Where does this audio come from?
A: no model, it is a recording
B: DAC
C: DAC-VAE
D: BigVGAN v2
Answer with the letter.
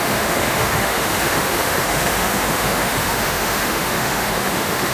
C